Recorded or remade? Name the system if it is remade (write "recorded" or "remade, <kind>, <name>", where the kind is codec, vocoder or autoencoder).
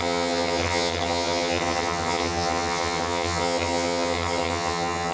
remade, vocoder, HiFi-GAN